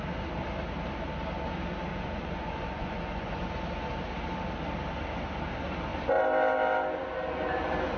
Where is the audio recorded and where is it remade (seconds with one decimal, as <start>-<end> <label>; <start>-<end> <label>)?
0.0-1.9 recorded; 1.9-3.4 remade; 3.4-8.0 recorded